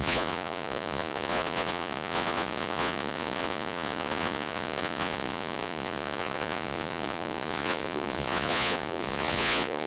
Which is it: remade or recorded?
remade